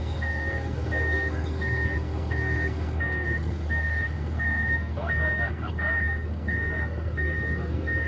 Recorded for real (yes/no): no